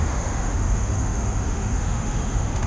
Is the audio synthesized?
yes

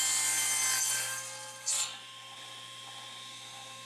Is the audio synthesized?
no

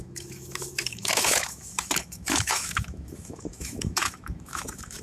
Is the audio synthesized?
yes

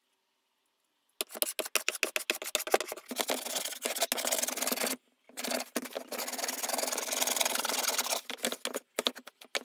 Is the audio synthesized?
no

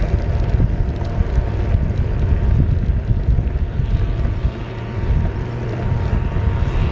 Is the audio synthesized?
no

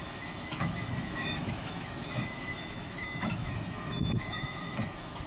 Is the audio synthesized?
yes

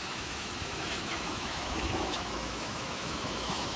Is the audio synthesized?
yes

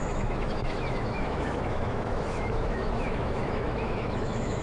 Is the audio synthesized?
yes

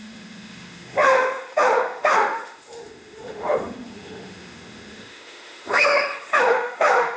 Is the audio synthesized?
yes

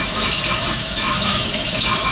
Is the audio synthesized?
yes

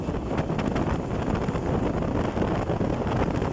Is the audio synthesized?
no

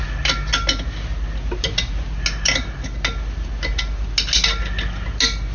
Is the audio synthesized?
no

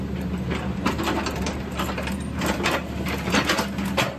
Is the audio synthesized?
no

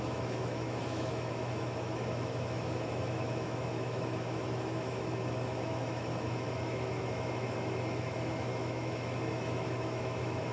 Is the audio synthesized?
yes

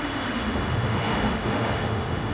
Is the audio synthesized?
yes